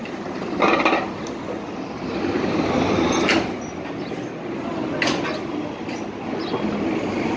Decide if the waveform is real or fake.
real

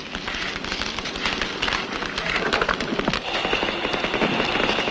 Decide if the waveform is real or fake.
real